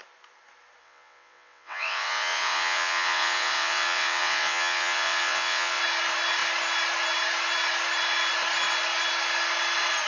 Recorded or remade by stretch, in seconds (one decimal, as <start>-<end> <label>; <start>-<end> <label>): 0.0-0.8 recorded; 0.8-5.8 remade; 5.8-10.1 recorded